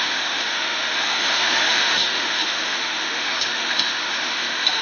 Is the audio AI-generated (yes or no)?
yes